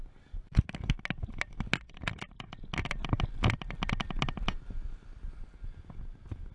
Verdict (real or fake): real